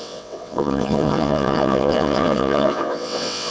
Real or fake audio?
fake